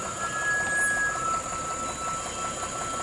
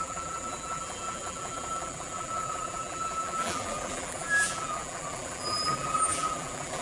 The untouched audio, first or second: first